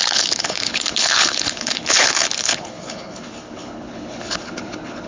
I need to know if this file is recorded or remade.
remade